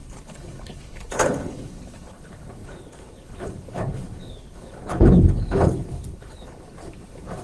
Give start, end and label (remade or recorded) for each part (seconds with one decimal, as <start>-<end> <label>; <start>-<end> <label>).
0.0-7.4 remade